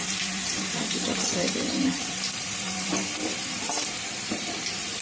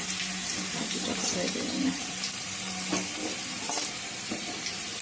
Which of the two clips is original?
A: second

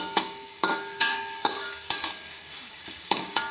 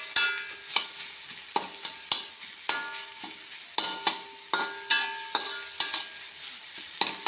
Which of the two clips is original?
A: second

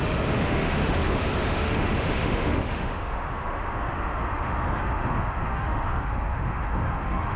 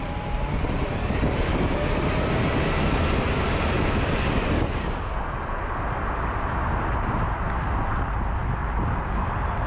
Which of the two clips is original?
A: second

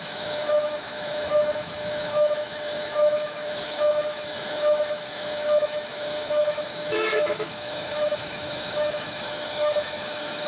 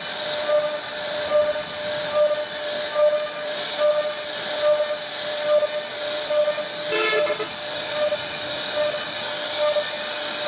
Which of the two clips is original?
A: second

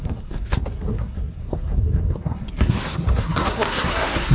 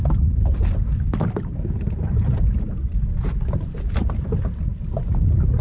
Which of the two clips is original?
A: second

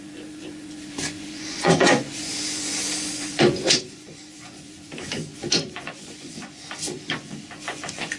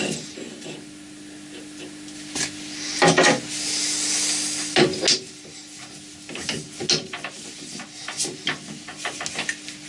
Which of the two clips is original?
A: second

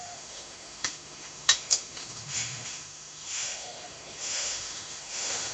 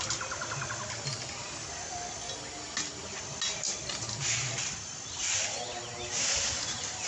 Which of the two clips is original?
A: second